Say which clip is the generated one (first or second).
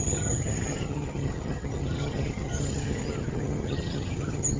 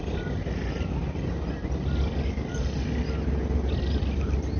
first